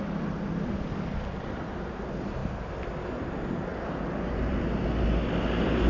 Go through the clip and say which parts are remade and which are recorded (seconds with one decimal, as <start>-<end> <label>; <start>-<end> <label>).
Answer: 0.0-5.9 recorded